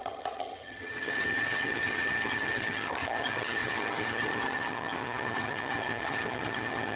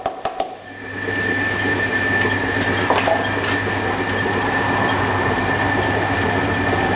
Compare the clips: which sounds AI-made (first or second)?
first